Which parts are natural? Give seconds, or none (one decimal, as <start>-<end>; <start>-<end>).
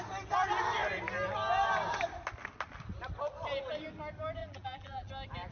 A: 0.0-4.4; 5.1-5.5